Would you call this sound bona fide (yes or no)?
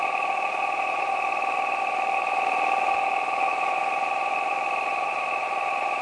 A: no